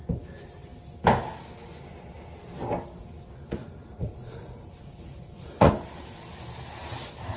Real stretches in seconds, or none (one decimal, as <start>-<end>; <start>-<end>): 0.0-3.6; 5.7-7.4